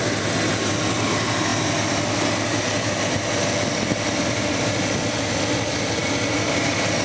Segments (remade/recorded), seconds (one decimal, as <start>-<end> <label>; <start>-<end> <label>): 0.0-7.0 recorded